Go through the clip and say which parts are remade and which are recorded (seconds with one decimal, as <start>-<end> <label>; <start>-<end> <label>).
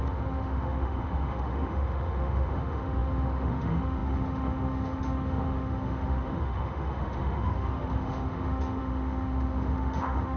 0.0-10.4 remade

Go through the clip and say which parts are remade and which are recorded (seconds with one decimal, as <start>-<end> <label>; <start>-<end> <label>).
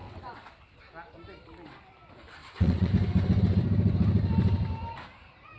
0.0-0.8 remade; 0.8-2.4 recorded; 2.4-2.9 remade; 2.9-5.6 recorded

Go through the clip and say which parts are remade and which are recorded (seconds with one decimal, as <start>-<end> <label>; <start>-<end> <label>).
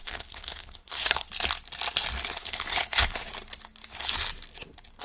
0.0-1.3 remade; 1.3-2.4 recorded; 2.4-3.3 remade; 3.3-5.0 recorded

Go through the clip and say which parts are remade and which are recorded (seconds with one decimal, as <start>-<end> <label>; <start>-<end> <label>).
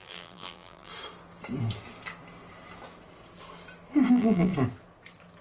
0.0-0.9 remade; 0.9-4.1 recorded; 4.1-4.5 remade; 4.5-5.4 recorded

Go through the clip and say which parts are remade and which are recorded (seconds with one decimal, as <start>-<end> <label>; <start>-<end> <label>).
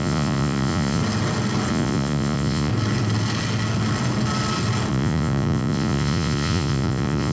0.0-1.0 remade; 1.0-1.7 recorded; 1.7-2.7 remade; 2.7-4.9 recorded; 4.9-7.3 remade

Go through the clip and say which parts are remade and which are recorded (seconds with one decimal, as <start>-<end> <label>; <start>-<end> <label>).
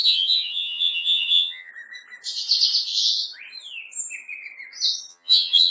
0.0-1.7 remade; 1.7-5.1 recorded; 5.1-5.7 remade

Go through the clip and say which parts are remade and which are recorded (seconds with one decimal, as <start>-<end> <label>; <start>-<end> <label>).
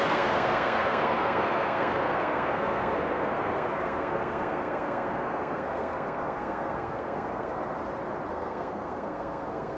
0.0-7.6 remade; 7.6-8.3 recorded; 8.3-9.8 remade